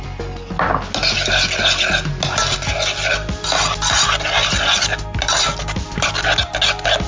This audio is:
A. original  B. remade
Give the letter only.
A